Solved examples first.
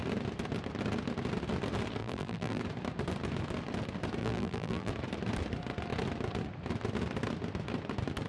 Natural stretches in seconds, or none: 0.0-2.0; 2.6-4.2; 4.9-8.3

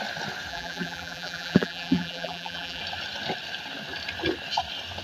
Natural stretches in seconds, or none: 0.0-0.5; 2.8-5.0

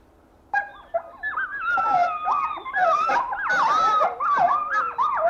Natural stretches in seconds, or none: 0.0-5.3